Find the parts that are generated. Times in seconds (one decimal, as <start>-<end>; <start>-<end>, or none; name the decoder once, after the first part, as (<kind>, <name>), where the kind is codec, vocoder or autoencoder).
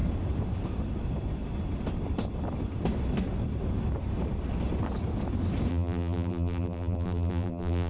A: 5.7-7.9 (vocoder, BigVGAN v2)